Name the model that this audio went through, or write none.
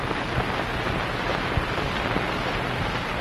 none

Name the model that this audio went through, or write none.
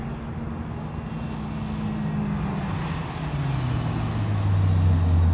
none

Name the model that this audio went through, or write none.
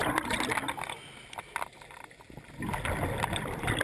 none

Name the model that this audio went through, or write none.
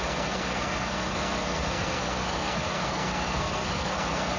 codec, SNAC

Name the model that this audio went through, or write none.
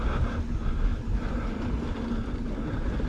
none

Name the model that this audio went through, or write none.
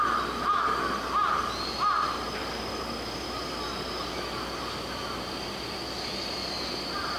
none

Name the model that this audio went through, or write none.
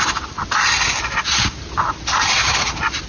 none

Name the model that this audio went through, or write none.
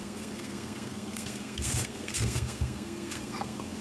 codec, SNAC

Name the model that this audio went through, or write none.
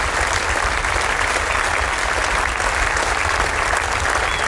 none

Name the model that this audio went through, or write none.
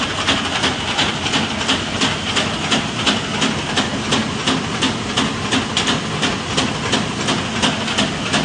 none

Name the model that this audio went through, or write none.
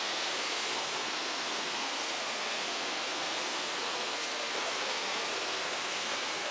codec, SNAC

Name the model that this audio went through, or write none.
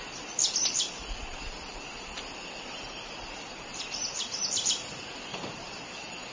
none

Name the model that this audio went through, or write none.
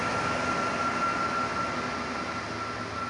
none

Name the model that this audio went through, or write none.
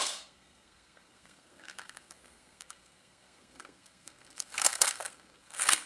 codec, SNAC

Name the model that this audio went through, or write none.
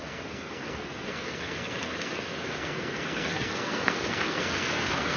codec, SNAC